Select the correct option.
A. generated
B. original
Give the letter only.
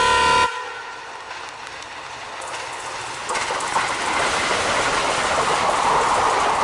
B